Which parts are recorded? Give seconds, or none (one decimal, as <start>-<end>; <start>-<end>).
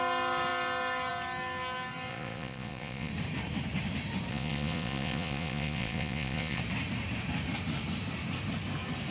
0.0-2.1; 3.1-4.3; 6.6-9.1